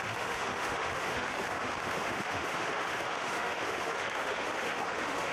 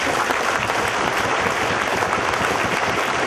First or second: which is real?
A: second